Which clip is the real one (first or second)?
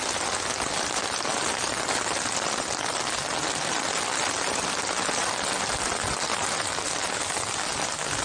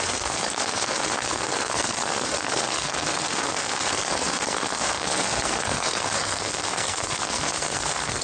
first